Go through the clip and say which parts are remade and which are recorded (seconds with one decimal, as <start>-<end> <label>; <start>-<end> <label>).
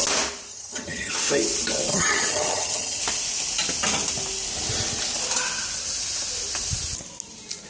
0.0-0.5 recorded; 0.5-1.1 remade; 1.1-1.9 recorded; 1.9-3.0 remade; 3.0-7.7 recorded